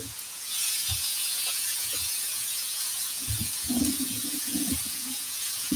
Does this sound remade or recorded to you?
remade